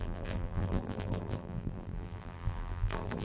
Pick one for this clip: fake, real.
fake